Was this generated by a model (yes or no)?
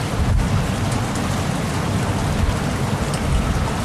no